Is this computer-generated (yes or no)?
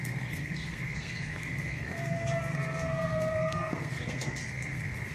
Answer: yes